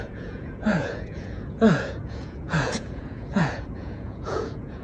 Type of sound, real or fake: fake